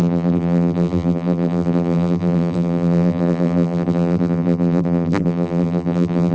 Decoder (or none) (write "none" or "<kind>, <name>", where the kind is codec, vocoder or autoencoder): vocoder, BigVGAN v2